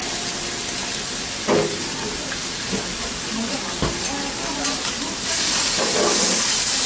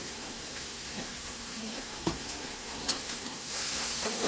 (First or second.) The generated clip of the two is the second